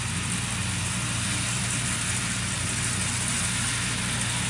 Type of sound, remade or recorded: recorded